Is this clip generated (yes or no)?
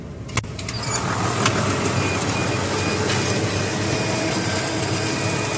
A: no